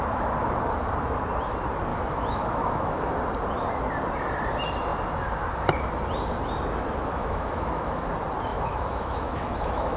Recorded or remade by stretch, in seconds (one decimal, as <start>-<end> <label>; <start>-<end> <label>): 0.0-1.9 recorded; 1.9-3.1 remade; 3.1-7.2 recorded; 7.2-8.1 remade; 8.1-8.5 recorded; 8.5-10.0 remade